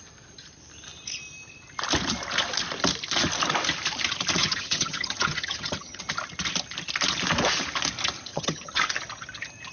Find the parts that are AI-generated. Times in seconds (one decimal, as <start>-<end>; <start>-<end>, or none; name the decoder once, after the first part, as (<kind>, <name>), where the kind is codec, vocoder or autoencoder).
4.4-6.0 (vocoder, HiFi-GAN); 8.3-8.8